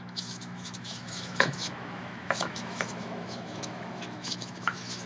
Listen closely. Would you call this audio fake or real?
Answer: fake